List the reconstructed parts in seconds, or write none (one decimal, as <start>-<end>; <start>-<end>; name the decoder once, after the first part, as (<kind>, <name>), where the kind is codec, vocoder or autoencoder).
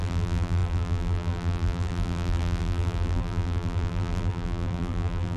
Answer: 0.0-5.4 (vocoder, BigVGAN v2)